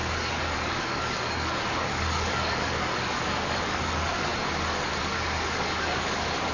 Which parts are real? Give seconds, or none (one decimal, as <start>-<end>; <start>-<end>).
4.3-5.0